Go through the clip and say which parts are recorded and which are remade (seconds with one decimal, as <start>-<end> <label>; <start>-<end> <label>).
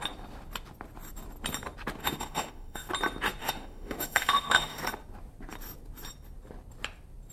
0.0-2.0 recorded; 2.0-2.9 remade; 2.9-3.4 recorded; 3.4-4.8 remade; 4.8-7.3 recorded